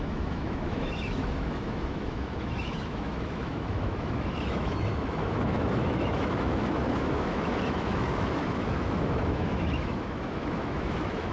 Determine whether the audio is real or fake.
fake